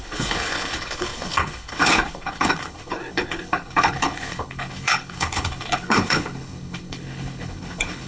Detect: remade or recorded remade